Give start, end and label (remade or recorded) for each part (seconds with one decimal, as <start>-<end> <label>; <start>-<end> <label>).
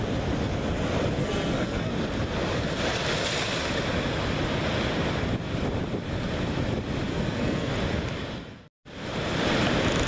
0.0-1.2 recorded; 1.2-1.9 remade; 1.9-7.1 recorded; 7.1-7.7 remade; 7.7-10.1 recorded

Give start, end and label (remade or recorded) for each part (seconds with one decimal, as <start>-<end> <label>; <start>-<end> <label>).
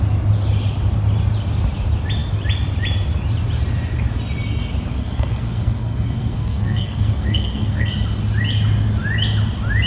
0.0-5.0 recorded; 5.0-7.9 remade; 7.9-9.9 recorded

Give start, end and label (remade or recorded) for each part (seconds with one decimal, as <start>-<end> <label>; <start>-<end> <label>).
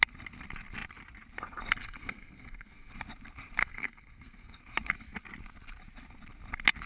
0.0-1.8 recorded; 1.8-2.9 remade; 2.9-3.6 recorded; 3.6-4.6 remade; 4.6-6.9 recorded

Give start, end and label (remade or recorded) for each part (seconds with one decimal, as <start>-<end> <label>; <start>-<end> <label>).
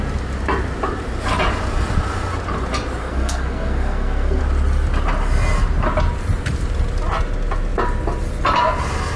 0.0-3.0 recorded; 3.0-4.4 remade; 4.4-9.2 recorded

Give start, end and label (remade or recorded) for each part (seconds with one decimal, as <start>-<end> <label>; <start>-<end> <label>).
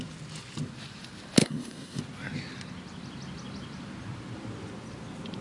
0.0-1.4 recorded; 1.4-2.0 remade; 2.0-5.4 recorded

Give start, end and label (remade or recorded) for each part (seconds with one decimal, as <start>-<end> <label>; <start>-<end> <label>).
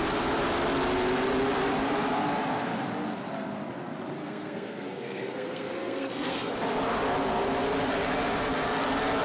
0.0-4.2 recorded; 4.2-6.5 remade; 6.5-9.2 recorded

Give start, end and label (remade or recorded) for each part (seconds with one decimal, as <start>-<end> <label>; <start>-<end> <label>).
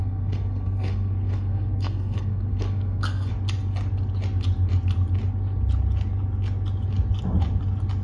0.0-3.3 remade; 3.3-8.0 recorded